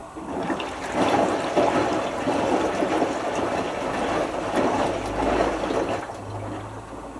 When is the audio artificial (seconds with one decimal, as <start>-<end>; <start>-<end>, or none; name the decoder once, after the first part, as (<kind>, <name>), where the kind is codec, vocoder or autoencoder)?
none